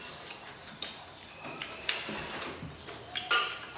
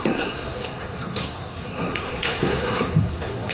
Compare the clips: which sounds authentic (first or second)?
first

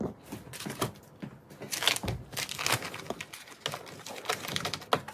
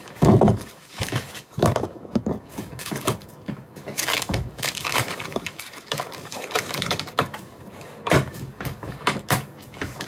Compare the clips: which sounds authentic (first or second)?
first